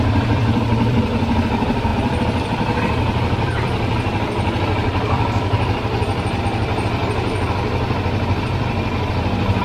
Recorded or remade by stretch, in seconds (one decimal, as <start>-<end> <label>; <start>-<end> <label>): 0.0-7.0 remade; 7.0-9.1 recorded; 9.1-9.6 remade